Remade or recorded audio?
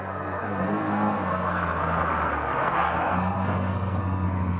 remade